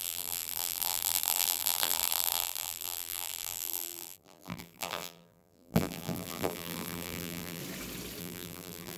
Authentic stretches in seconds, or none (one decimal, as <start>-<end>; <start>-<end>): 7.6-8.2